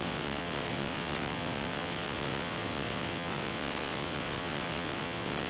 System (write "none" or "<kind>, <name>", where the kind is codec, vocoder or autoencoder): vocoder, WaveNeXt